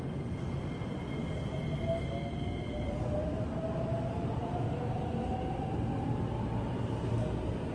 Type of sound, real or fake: real